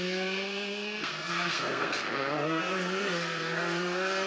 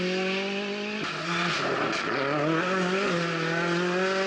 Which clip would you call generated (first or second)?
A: first